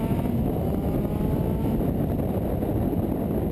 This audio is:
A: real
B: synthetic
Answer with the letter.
A